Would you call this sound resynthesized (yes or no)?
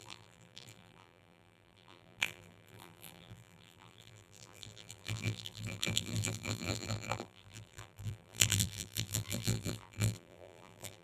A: yes